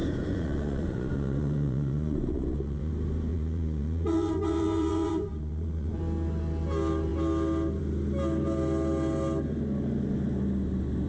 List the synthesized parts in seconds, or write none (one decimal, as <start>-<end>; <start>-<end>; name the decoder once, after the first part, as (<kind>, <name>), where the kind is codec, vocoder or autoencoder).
0.0-2.9 (vocoder, Vocos); 3.3-6.0